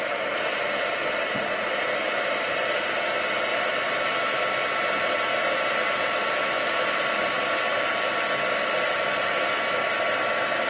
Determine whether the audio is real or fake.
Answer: real